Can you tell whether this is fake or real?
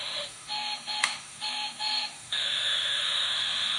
fake